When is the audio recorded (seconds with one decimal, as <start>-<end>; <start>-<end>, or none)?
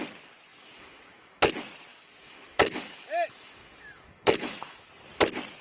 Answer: 0.0-0.5; 1.5-1.9; 4.9-5.6